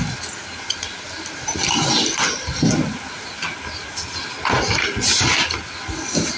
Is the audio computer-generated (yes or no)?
no